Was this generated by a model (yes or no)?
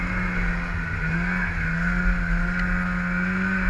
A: no